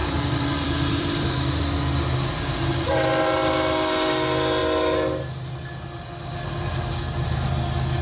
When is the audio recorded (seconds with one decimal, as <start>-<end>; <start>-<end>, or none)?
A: 1.3-8.0

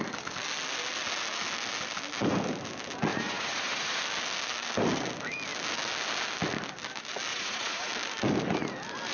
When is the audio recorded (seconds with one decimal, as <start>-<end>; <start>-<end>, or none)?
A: 0.0-3.1; 4.0-7.3; 7.9-9.1

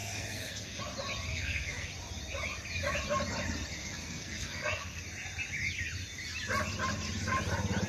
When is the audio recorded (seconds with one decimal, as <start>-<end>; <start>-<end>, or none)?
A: 0.8-1.3; 1.9-3.8; 5.0-7.9

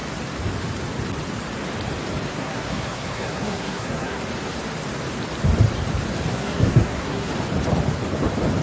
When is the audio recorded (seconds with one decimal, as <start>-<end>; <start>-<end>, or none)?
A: 0.0-2.3; 4.2-6.3; 7.3-8.6

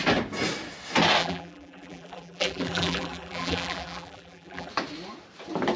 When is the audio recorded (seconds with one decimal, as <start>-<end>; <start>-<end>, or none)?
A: 0.0-1.2; 4.7-5.8

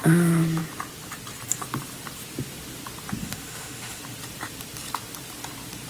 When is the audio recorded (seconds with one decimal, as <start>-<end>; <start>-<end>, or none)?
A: 0.0-3.2; 4.0-5.9

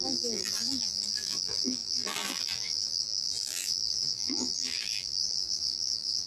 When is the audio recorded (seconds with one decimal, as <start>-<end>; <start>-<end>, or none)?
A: none

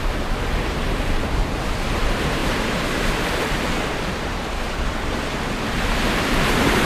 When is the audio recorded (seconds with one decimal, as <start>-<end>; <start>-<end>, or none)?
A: 1.4-1.9; 2.4-3.4